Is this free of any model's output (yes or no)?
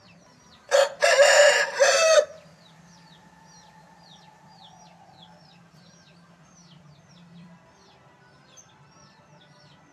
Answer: no